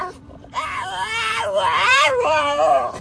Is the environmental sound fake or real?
fake